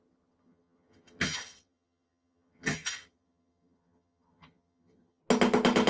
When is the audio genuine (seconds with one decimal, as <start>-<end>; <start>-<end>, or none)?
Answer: 5.2-5.9